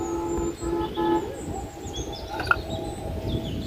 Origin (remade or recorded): recorded